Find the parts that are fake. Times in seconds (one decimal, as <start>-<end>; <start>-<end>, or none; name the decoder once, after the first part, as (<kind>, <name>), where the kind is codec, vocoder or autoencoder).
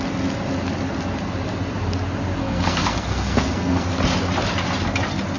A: 2.4-3.9 (codec, SNAC)